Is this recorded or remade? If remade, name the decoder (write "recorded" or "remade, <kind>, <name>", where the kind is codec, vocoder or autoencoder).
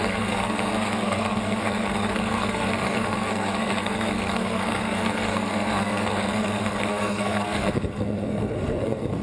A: remade, codec, SNAC